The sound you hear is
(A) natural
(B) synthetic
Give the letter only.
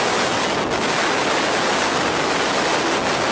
A